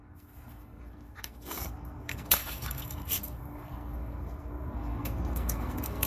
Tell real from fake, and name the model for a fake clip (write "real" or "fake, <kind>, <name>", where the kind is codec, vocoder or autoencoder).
fake, codec, SNAC